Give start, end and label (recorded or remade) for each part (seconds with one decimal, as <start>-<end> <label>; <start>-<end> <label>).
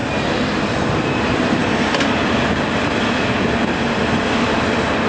0.0-0.9 recorded; 0.9-1.6 remade; 1.6-5.1 recorded